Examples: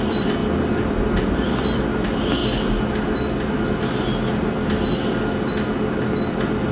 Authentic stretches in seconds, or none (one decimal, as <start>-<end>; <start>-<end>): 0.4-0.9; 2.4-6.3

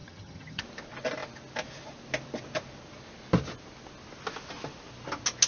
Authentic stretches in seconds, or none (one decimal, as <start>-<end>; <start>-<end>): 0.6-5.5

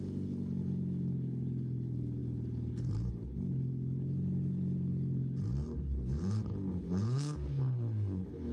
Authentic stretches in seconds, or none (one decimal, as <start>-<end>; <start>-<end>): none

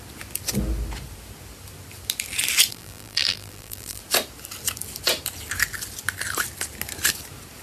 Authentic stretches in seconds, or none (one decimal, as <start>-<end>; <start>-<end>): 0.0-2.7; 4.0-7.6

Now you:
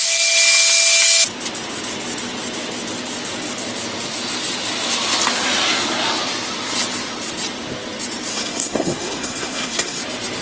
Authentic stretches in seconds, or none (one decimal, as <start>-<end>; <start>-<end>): 0.0-8.3; 10.0-10.4

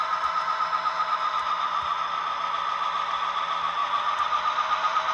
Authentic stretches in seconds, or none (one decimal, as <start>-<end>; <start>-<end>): 0.0-3.8

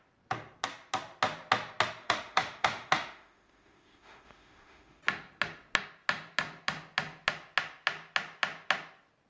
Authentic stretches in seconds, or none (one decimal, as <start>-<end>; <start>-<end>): 0.0-2.0; 5.0-9.3

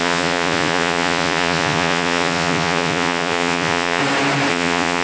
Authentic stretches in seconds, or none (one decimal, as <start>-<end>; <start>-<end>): 4.0-4.5